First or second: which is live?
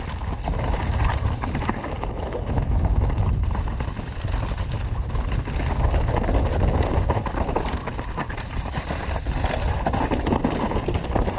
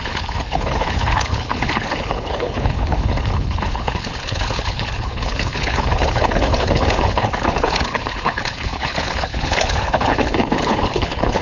first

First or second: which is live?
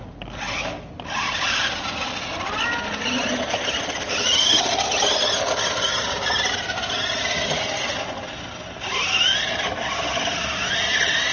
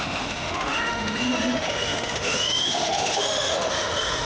first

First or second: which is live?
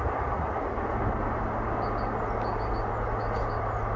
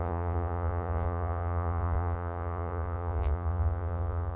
first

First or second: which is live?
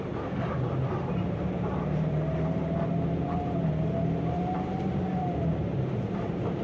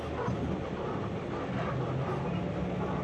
second